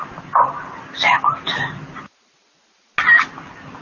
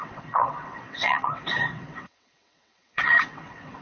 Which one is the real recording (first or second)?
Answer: first